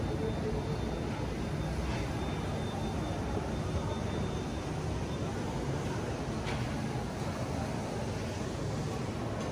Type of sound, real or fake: real